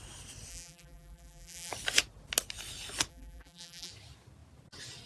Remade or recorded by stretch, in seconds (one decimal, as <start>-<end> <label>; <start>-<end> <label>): 0.0-0.5 recorded; 0.5-1.7 remade; 1.7-3.1 recorded; 3.1-3.9 remade; 3.9-5.1 recorded